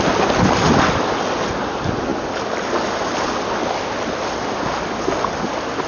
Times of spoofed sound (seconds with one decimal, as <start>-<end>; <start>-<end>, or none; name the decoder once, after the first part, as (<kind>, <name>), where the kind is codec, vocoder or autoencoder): none